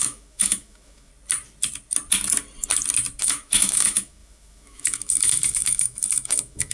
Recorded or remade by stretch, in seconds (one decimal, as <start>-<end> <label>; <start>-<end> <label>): 0.0-1.1 remade; 1.1-3.2 recorded; 3.2-6.7 remade